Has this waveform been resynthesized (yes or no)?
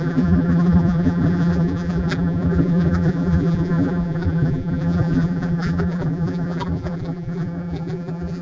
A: yes